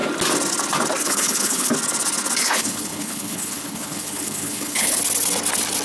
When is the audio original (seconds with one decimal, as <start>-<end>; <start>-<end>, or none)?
0.0-1.0; 1.7-2.4; 5.0-5.8